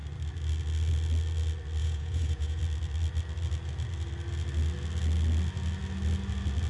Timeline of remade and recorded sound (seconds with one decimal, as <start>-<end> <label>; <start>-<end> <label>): 0.0-1.8 recorded; 1.8-2.6 remade; 2.6-6.7 recorded